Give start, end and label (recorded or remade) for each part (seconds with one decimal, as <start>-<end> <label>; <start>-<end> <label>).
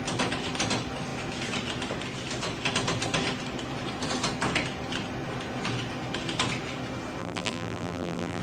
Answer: 0.0-7.2 recorded; 7.2-8.4 remade